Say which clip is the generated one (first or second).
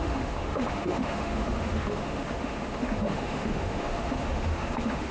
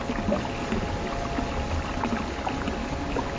first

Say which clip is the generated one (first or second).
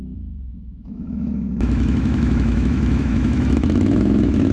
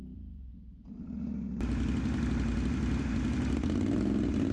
first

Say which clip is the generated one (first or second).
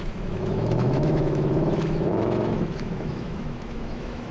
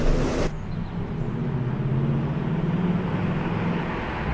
first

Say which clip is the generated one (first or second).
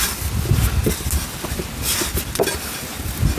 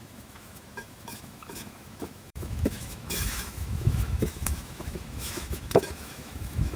second